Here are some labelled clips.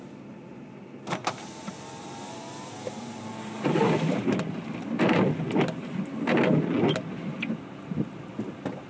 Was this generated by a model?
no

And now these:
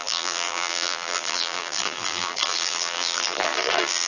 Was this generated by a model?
yes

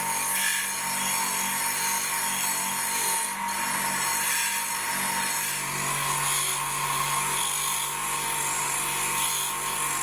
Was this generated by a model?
no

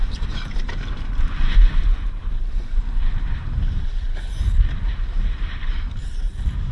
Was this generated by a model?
yes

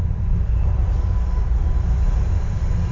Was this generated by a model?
yes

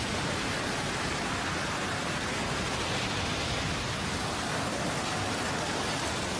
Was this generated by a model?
no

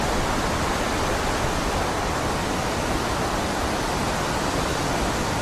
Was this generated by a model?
no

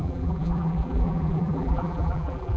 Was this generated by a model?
yes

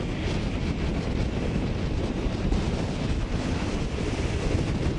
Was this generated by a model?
no